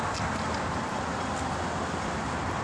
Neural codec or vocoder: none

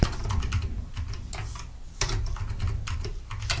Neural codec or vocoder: none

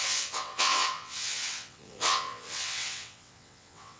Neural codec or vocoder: vocoder, WaveNeXt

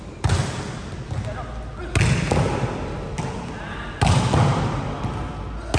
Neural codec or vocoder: none